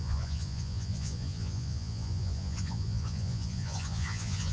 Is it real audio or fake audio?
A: fake